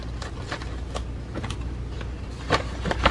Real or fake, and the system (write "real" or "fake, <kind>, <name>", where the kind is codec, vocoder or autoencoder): fake, vocoder, BigVGAN v2